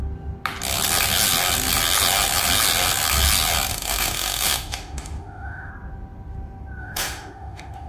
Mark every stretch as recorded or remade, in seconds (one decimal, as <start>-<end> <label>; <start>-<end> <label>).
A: 0.0-3.7 recorded; 3.7-5.7 remade; 5.7-6.8 recorded; 6.8-7.9 remade